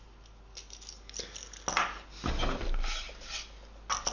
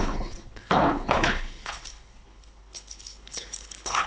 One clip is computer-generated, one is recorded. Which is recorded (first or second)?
first